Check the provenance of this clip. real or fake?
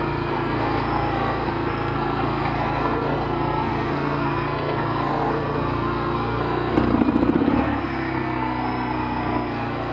fake